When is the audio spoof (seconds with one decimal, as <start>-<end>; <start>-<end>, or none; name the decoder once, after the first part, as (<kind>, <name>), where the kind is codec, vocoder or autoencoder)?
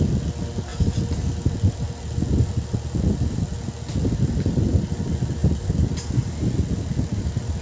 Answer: none